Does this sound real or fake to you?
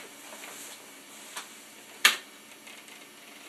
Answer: real